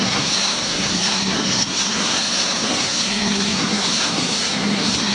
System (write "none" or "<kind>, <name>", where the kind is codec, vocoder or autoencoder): codec, SNAC